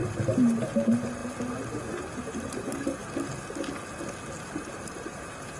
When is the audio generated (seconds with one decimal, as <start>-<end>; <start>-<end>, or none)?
0.0-1.2; 1.8-3.0; 4.4-5.6